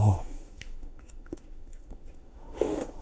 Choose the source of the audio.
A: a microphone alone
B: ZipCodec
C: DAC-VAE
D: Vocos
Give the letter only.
C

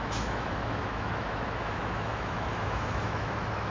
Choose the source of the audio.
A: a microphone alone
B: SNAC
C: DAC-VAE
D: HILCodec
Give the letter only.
C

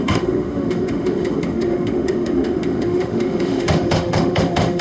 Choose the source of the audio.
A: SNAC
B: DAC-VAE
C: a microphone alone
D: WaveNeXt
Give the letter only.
B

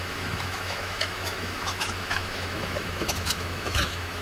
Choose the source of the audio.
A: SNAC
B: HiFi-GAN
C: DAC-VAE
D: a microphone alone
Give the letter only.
C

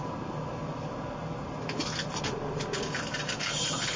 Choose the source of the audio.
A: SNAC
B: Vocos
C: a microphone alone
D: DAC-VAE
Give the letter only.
C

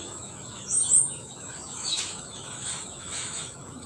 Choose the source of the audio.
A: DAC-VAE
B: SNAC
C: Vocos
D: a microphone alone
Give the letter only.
A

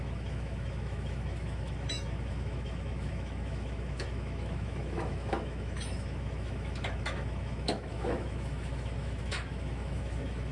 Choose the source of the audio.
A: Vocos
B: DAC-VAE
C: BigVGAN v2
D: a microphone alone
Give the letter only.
B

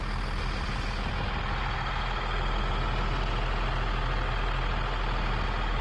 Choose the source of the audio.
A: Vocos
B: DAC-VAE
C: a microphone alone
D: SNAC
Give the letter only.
C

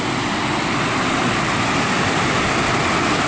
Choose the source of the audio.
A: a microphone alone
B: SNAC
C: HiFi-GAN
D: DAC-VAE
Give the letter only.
A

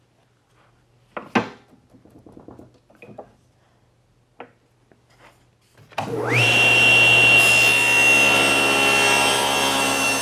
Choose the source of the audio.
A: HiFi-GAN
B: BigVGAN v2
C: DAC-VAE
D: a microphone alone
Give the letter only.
D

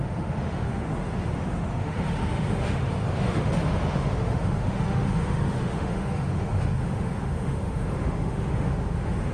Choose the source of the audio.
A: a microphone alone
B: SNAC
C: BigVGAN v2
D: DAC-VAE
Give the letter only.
D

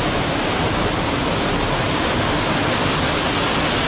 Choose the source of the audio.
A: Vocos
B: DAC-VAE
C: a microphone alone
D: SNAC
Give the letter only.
C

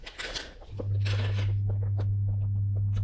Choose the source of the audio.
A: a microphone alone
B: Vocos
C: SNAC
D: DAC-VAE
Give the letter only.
A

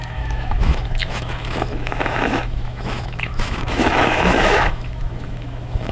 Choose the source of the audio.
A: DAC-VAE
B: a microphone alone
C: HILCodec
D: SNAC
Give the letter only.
A